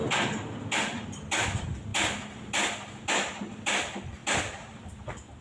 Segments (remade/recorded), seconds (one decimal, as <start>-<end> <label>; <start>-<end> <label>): 0.0-5.4 recorded